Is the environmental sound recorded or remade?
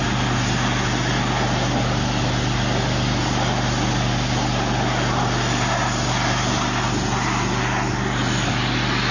recorded